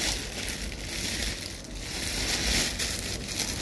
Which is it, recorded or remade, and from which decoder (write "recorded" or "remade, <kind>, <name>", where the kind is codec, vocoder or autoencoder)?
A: recorded